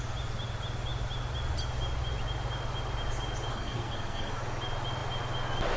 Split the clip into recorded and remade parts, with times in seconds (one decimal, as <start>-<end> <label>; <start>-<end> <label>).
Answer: 0.0-3.5 recorded; 3.5-4.3 remade; 4.3-5.8 recorded